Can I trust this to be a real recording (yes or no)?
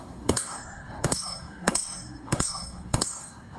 no